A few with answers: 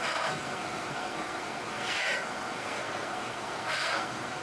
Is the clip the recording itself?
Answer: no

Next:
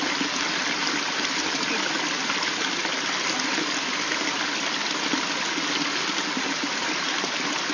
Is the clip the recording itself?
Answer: yes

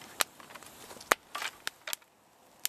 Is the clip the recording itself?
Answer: yes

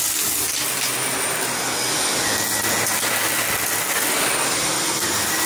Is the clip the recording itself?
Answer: yes